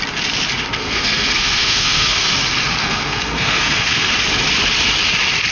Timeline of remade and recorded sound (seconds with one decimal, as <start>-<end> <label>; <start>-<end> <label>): 0.0-0.8 recorded; 0.8-2.3 remade; 2.3-2.8 recorded; 2.8-4.1 remade; 4.1-5.5 recorded